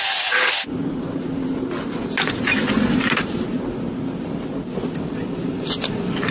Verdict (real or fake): real